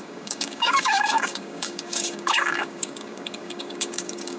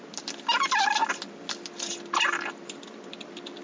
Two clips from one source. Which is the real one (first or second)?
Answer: second